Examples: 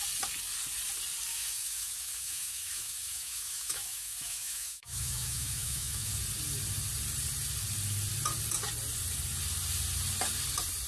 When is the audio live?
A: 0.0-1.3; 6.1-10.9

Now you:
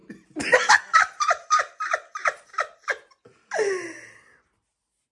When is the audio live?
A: 1.6-2.2; 3.5-5.1

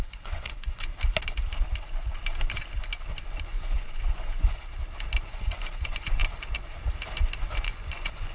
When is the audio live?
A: 0.9-3.4; 4.6-5.3; 6.2-7.6